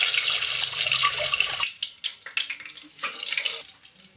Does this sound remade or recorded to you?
recorded